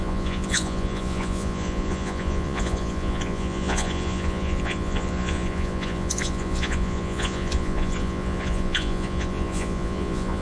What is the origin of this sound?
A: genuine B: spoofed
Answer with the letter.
B